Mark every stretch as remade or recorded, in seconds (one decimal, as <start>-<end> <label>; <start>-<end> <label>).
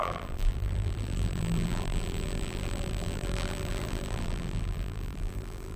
0.0-5.8 remade